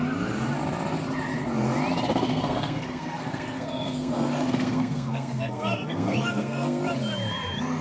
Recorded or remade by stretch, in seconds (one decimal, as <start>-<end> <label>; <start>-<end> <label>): 0.0-2.1 recorded; 2.1-6.8 remade; 6.8-7.8 recorded